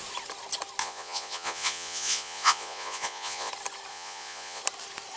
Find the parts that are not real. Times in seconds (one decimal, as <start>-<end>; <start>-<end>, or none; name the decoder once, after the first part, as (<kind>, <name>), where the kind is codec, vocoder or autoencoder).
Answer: 0.8-3.5 (vocoder, Vocos); 3.9-4.6